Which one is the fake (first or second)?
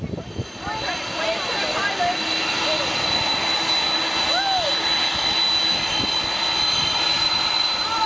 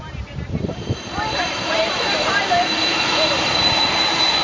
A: second